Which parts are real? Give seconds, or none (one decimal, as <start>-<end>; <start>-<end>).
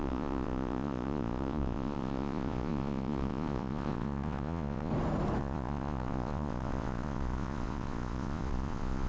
4.9-5.4